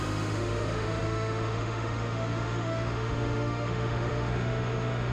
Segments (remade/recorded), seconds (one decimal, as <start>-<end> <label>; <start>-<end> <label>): 0.0-5.1 remade